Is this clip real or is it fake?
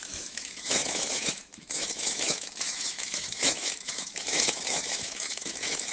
fake